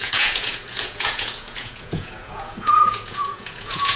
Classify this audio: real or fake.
fake